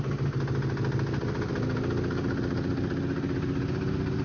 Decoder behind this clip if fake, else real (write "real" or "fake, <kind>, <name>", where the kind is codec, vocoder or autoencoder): real